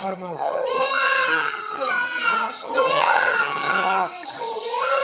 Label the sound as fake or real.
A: fake